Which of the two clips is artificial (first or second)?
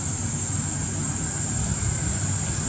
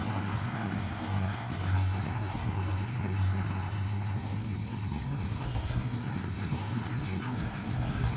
second